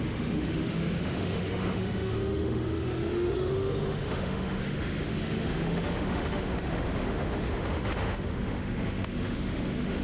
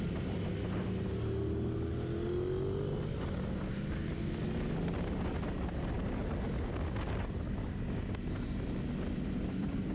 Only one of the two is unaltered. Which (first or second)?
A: second